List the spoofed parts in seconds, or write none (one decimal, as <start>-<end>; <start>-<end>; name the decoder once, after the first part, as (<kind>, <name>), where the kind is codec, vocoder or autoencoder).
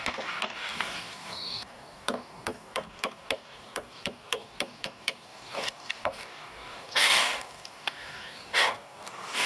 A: 0.0-9.5 (codec, DAC)